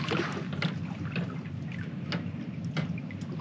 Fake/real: real